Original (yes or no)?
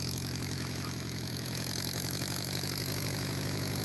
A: no